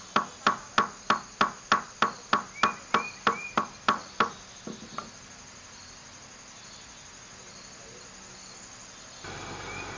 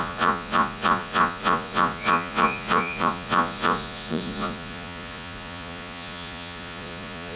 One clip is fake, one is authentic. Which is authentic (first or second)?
first